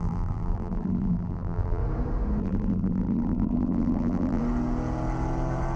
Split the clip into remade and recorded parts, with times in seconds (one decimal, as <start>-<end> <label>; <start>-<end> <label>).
0.0-1.8 remade; 1.8-2.4 recorded; 2.4-4.4 remade; 4.4-5.8 recorded